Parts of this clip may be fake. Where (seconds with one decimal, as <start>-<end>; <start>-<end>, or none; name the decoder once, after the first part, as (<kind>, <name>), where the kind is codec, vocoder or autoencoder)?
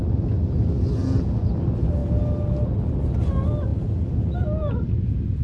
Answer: none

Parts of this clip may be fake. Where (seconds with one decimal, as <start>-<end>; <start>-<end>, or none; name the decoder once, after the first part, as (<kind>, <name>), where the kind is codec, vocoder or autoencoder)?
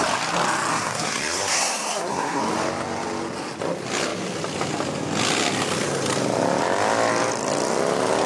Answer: 0.7-2.4 (codec, SNAC)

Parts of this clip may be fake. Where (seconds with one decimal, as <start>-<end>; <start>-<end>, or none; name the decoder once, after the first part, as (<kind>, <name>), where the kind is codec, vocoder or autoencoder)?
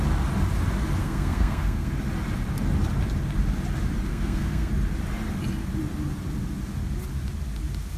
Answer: 1.0-1.9 (codec, SNAC); 4.1-4.7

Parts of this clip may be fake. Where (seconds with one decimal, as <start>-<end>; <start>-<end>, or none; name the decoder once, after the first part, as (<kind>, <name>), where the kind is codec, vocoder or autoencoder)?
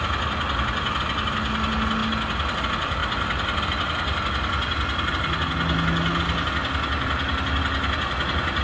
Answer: none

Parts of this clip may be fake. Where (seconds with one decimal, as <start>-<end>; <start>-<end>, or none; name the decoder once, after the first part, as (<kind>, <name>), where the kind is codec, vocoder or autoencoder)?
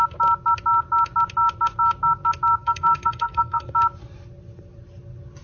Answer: 2.6-3.7 (codec, SNAC)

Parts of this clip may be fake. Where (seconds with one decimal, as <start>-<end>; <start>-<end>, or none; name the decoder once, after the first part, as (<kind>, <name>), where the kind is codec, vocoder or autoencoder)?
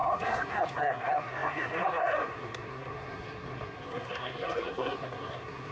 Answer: 0.0-5.7 (codec, SNAC)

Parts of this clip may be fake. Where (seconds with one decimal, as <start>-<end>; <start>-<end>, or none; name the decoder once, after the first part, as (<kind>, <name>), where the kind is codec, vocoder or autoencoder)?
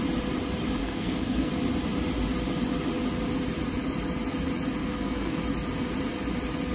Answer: 0.8-1.5 (codec, SNAC); 4.8-5.4